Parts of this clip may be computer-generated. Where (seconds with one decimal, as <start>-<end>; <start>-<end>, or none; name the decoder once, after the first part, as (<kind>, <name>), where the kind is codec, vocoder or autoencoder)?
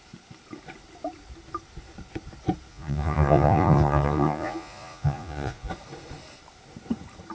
2.7-5.7 (vocoder, Vocos)